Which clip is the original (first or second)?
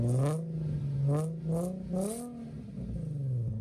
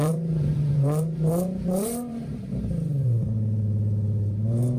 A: first